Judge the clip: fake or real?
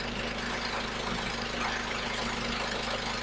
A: real